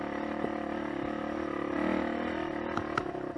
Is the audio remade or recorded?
recorded